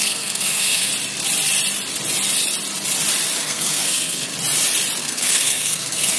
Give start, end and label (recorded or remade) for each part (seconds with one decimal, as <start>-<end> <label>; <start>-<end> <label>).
0.0-0.9 remade; 0.9-3.4 recorded; 3.4-4.3 remade; 4.3-5.0 recorded; 5.0-6.2 remade